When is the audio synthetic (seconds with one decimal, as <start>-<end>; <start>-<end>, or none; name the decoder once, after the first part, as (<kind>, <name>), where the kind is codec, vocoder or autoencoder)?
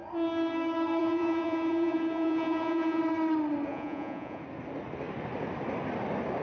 1.0-3.0 (vocoder, Vocos); 3.7-4.4